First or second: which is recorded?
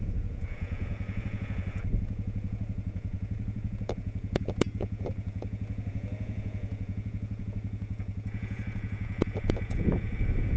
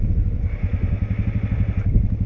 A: second